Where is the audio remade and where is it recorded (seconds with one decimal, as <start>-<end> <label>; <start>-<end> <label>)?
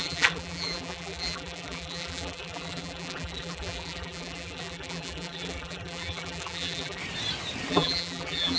0.0-7.0 remade; 7.0-7.7 recorded; 7.7-8.6 remade